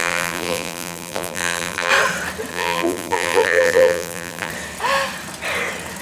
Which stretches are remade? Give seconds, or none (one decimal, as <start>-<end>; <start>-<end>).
0.0-1.9; 2.5-4.5